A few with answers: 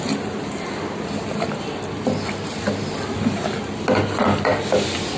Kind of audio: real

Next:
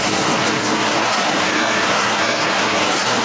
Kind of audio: fake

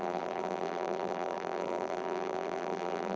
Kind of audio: fake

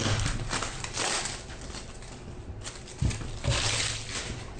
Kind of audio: real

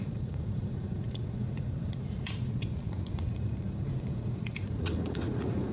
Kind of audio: fake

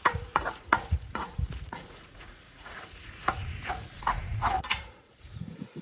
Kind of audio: fake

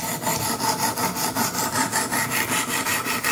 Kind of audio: real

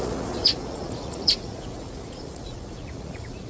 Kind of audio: fake